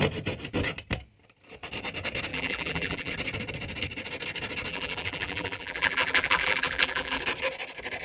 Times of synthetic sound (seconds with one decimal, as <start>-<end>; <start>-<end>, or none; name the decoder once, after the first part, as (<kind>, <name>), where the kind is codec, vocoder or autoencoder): 2.3-3.1 (vocoder, BigVGAN v2); 4.7-7.2